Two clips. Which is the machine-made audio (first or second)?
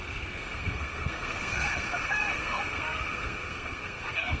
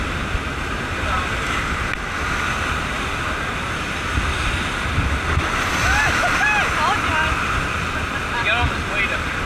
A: first